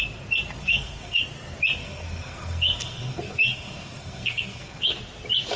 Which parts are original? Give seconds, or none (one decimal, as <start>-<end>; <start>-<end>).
0.0-0.6; 1.2-1.8; 4.8-5.6